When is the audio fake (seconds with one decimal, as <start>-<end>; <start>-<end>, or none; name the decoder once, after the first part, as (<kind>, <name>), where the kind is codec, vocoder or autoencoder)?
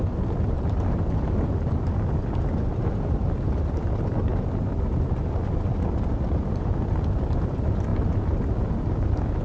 2.2-5.2 (vocoder, BigVGAN v2)